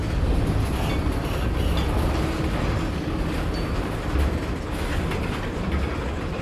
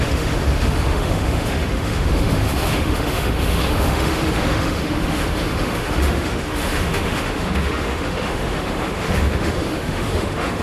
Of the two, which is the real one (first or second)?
first